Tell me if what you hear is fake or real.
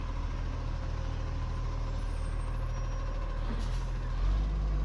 real